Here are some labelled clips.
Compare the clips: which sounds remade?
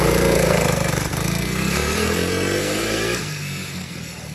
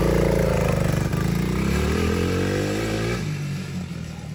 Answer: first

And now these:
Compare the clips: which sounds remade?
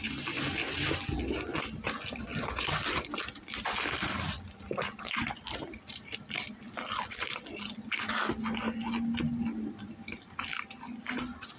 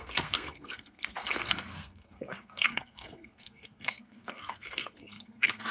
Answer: second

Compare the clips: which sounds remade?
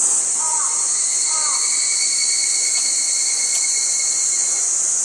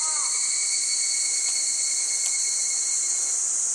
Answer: first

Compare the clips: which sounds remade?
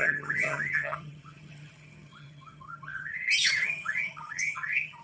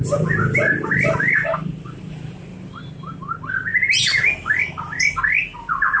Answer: first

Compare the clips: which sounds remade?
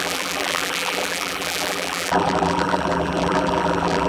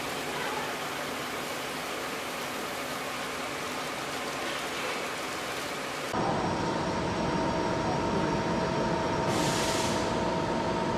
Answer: first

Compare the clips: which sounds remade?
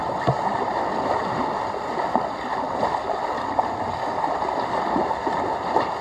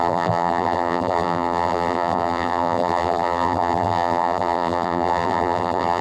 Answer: second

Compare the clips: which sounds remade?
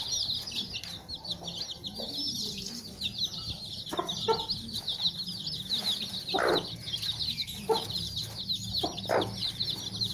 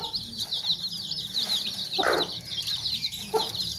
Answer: second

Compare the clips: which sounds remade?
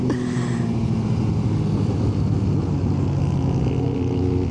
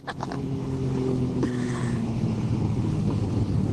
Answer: second